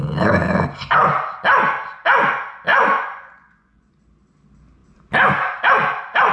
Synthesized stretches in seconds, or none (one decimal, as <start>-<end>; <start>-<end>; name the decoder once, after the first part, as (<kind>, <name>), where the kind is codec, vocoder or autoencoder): 2.7-3.9 (vocoder, Vocos)

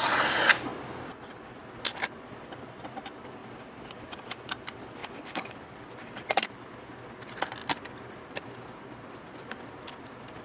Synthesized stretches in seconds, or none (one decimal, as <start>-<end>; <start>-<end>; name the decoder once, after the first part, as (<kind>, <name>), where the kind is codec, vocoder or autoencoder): 3.4-4.5 (vocoder, BigVGAN v2); 5.0-6.1